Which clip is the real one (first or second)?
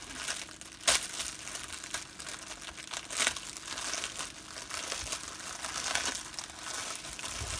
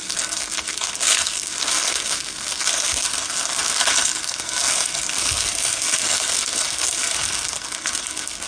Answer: first